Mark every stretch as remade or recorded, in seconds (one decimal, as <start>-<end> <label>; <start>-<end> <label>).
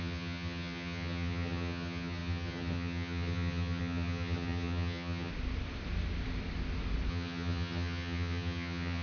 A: 0.0-5.3 remade; 5.3-7.1 recorded; 7.1-9.0 remade